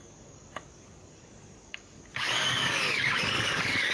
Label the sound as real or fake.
fake